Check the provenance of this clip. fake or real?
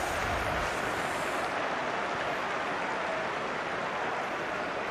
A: fake